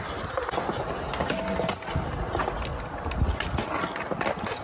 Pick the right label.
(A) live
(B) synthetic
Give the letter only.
A